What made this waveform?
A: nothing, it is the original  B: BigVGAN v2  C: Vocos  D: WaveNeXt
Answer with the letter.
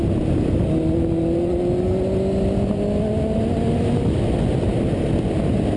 A